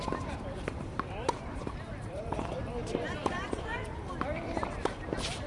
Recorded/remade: remade